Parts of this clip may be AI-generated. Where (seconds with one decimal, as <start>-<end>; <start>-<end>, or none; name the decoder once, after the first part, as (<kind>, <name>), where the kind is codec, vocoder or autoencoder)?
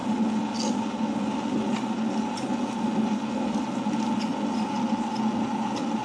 none